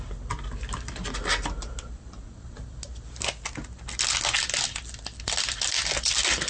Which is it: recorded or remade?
recorded